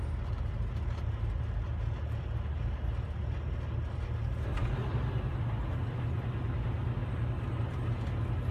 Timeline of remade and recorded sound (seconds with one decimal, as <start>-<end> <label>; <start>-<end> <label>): 0.0-8.5 recorded